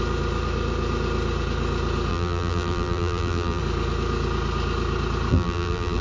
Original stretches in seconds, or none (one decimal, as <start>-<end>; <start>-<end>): 0.0-2.1; 3.6-5.3